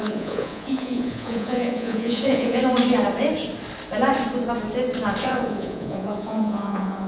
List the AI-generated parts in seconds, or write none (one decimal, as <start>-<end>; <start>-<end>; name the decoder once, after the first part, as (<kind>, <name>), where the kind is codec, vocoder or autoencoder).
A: 0.0-2.6 (vocoder, Vocos); 5.2-7.1